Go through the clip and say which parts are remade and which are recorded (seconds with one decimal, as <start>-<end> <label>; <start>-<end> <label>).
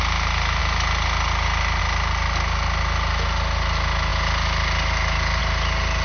0.0-6.0 recorded